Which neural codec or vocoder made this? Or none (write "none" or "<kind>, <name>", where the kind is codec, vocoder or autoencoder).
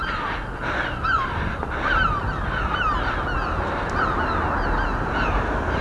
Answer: none